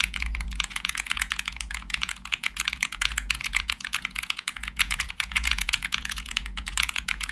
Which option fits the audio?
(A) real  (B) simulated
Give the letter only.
B